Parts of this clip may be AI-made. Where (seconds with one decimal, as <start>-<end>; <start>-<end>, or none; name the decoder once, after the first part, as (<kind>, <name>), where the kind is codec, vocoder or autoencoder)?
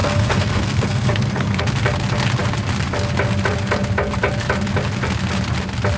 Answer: 0.0-1.6 (codec, SNAC)